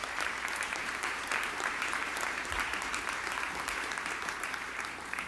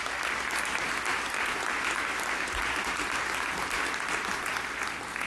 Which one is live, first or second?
second